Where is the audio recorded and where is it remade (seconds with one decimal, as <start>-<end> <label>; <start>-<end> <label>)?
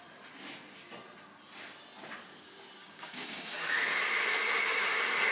0.0-2.8 recorded; 2.8-3.7 remade; 3.7-5.3 recorded